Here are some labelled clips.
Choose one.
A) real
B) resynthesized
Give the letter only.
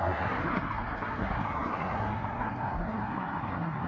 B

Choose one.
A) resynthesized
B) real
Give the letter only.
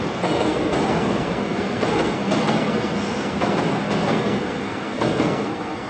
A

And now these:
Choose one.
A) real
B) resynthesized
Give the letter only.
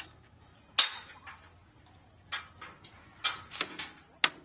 A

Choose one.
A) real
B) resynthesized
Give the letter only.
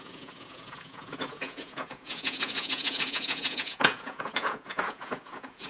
B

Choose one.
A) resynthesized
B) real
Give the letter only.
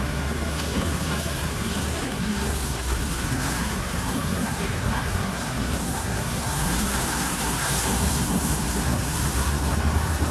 A